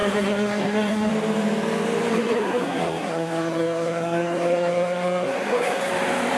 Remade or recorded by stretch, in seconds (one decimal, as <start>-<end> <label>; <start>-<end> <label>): 0.0-1.1 remade; 1.1-2.1 recorded; 2.1-5.9 remade; 5.9-6.4 recorded